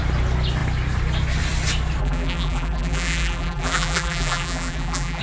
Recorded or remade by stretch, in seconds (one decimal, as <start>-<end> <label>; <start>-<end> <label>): 0.0-2.0 recorded; 2.0-5.2 remade